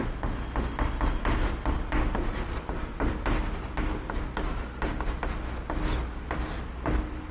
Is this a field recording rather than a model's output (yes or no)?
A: yes